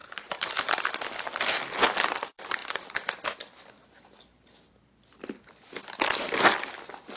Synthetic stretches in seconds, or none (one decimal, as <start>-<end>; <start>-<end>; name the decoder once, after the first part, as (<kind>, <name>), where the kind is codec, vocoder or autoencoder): 0.0-0.5 (vocoder, BigVGAN v2)